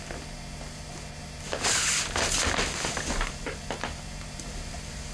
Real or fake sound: real